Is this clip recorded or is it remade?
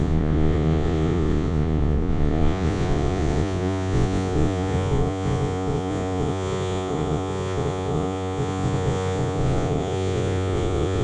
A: remade